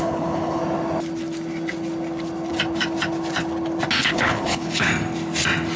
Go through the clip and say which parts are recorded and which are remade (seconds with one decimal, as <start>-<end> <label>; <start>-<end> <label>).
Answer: 0.0-0.6 remade; 0.6-4.1 recorded; 4.1-4.9 remade; 4.9-5.8 recorded